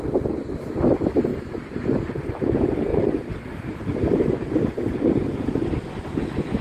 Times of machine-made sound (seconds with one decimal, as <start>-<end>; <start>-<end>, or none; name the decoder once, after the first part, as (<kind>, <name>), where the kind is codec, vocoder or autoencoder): 1.3-2.0 (vocoder, BigVGAN v2); 2.9-4.5